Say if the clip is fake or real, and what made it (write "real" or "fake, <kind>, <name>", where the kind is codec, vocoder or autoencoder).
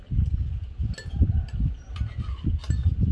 real